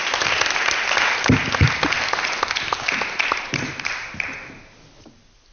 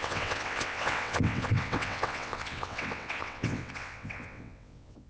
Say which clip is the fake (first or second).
second